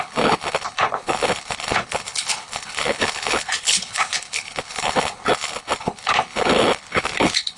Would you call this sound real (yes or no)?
no